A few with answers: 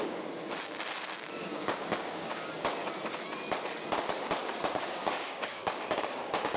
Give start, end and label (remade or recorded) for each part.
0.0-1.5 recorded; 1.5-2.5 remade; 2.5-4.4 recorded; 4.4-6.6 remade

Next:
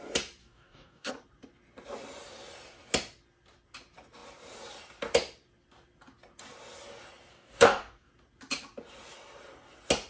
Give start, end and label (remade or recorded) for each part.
0.0-0.4 recorded; 0.4-1.1 remade; 1.1-7.3 recorded; 7.3-8.1 remade; 8.1-10.1 recorded